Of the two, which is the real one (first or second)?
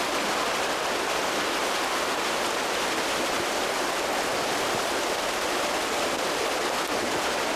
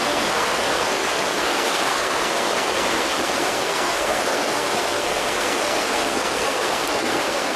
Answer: first